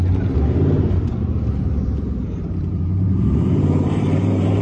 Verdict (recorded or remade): remade